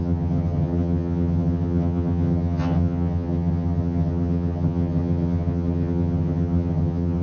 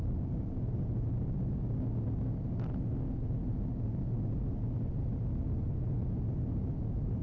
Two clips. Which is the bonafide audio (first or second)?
second